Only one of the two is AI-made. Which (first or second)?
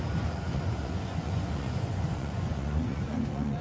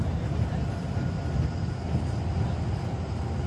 first